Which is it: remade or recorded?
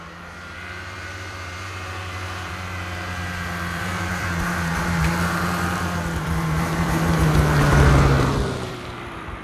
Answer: remade